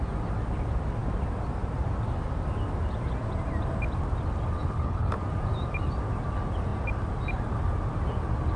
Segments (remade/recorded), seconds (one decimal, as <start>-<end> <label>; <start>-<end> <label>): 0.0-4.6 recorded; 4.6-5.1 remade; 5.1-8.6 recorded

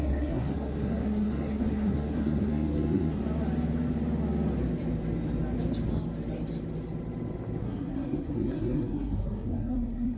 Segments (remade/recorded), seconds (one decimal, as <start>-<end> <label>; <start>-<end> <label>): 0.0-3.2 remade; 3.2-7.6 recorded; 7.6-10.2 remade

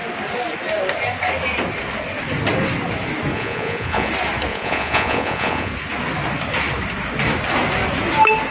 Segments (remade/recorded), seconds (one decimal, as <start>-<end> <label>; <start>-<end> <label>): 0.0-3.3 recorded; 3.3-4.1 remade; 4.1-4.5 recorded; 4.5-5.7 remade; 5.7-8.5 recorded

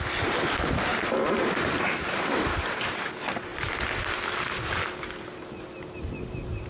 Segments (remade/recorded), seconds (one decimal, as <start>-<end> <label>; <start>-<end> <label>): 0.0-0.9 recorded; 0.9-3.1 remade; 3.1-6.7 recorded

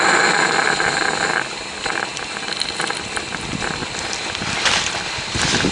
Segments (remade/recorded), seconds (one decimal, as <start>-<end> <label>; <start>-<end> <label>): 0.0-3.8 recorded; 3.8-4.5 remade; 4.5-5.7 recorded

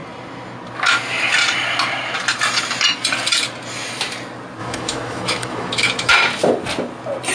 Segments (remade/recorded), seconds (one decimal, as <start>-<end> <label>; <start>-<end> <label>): 0.0-4.6 recorded; 4.6-6.1 remade; 6.1-7.3 recorded